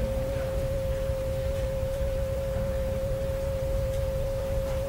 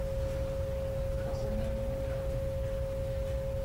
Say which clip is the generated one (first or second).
first